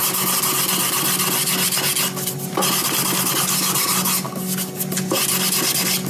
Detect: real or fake real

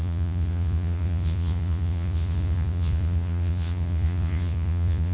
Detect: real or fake fake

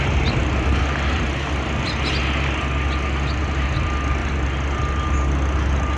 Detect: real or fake real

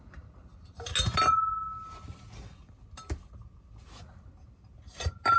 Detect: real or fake real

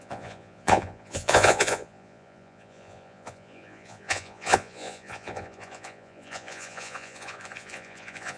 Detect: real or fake fake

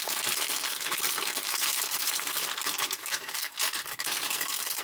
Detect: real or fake fake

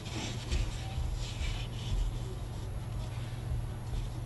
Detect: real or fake real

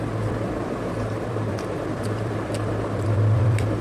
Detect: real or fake fake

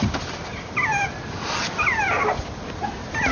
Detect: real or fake real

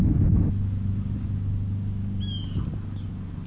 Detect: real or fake real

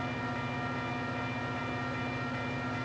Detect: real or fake real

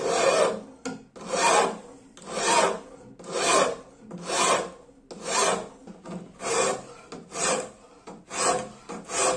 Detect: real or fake real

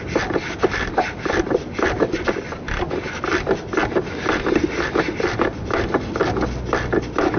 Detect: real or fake real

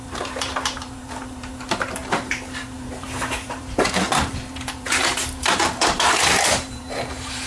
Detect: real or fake fake